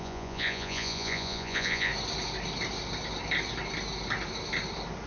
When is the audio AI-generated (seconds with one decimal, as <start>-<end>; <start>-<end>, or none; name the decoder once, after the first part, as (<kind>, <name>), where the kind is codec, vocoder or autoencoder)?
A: 0.0-1.9 (vocoder, Vocos)